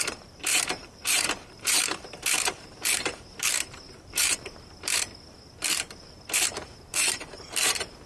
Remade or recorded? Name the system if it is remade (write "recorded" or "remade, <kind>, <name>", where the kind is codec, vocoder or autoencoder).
remade, vocoder, BigVGAN v2